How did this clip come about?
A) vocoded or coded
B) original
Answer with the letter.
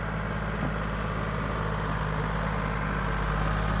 B